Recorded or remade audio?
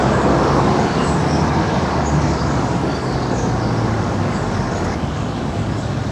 remade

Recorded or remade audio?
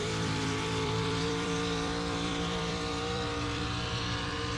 remade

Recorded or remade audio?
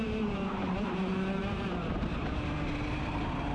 remade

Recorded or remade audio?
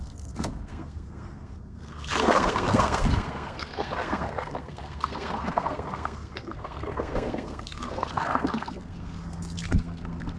remade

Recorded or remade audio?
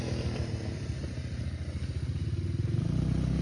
recorded